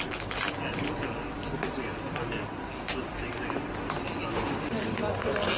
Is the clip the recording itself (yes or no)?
yes